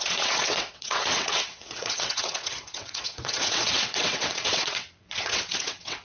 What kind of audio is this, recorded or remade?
remade